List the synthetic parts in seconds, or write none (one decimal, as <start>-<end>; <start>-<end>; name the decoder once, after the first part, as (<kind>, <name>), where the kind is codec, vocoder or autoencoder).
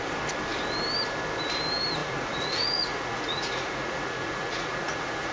2.0-5.3 (vocoder, Vocos)